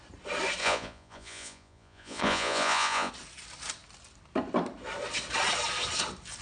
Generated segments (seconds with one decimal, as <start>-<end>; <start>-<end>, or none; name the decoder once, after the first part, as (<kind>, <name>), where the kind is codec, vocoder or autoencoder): 0.6-3.1 (vocoder, Vocos)